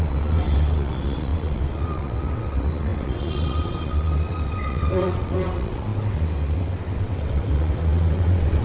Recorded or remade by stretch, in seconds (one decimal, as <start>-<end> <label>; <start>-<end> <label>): 0.0-8.6 remade